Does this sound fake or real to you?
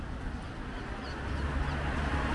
real